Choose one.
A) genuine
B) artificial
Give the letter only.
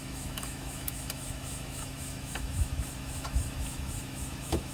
B